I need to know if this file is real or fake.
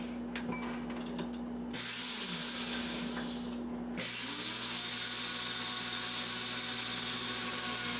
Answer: real